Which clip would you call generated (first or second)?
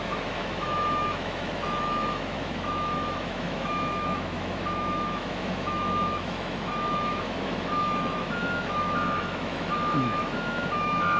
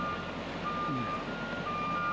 first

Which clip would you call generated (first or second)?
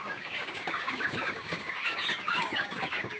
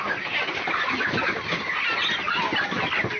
first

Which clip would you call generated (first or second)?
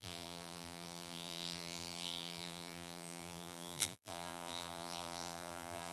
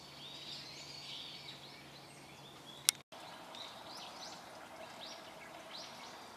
first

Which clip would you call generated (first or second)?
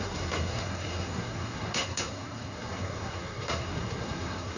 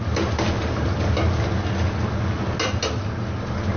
first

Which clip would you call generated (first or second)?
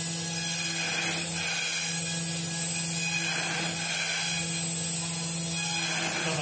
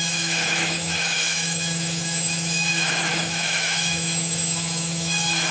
second